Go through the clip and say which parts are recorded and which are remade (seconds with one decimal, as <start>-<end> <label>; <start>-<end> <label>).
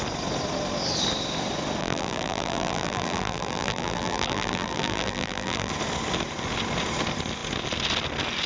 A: 0.0-1.8 recorded; 1.8-5.7 remade; 5.7-8.5 recorded